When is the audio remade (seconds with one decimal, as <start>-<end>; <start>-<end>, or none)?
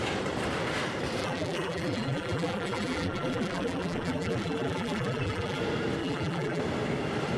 1.2-5.6; 6.0-6.6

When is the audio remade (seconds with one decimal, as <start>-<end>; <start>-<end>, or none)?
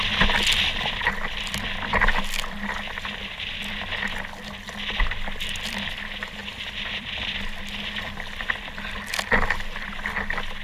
6.4-7.1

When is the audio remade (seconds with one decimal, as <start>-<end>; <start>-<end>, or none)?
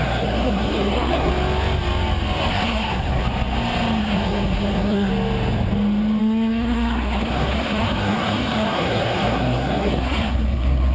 0.0-1.3; 2.5-3.2; 4.0-5.1; 6.2-10.9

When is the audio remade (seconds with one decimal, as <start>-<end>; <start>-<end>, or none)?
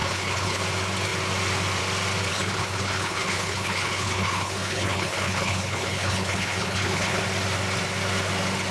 0.0-0.6; 2.3-7.2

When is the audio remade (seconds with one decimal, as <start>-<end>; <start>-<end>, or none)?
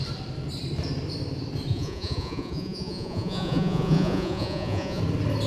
1.7-5.0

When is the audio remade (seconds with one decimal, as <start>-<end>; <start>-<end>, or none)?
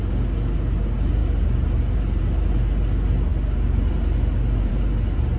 none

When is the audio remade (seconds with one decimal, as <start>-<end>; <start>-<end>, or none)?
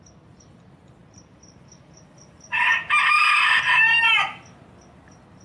1.0-3.2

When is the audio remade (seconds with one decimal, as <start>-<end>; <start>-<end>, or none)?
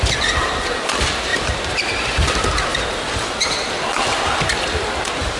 none